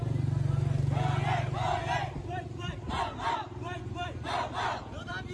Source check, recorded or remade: recorded